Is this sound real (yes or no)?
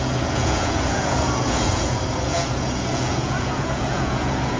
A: no